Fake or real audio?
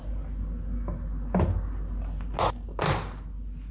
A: real